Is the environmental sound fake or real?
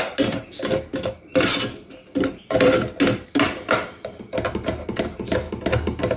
real